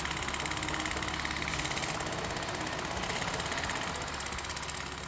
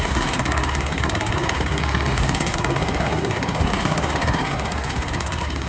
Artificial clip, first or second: second